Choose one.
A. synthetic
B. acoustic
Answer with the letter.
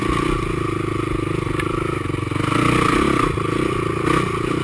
B